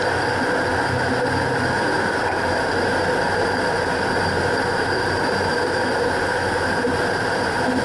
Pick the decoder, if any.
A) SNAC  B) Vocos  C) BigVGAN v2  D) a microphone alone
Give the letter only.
D